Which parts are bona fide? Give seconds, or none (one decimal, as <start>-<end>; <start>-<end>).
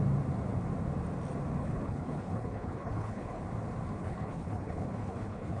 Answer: 0.0-1.6; 3.4-4.0